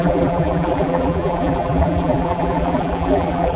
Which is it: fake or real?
fake